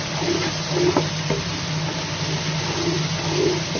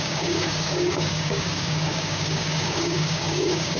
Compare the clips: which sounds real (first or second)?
first